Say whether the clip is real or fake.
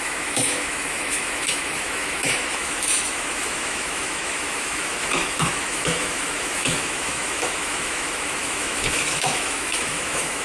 fake